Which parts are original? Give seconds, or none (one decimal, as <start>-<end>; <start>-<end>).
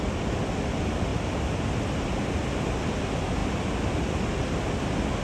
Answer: 0.0-1.1; 1.7-5.2